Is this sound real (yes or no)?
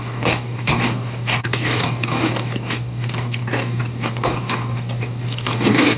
no